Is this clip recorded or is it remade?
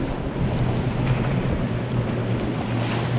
recorded